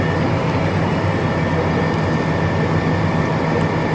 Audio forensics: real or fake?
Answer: real